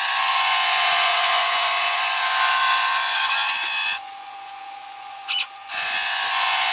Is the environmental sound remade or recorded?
remade